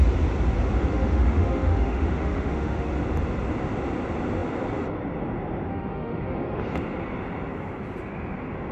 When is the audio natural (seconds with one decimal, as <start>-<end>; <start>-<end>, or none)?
0.0-0.9; 3.0-5.7; 6.6-8.7